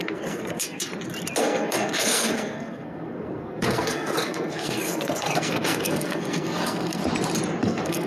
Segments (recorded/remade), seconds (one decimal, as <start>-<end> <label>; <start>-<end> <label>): 0.0-0.9 remade; 0.9-1.4 recorded; 1.4-7.0 remade; 7.0-7.6 recorded; 7.6-8.1 remade